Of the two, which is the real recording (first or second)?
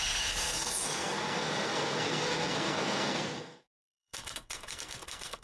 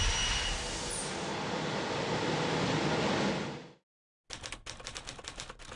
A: second